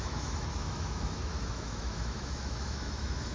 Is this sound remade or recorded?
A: remade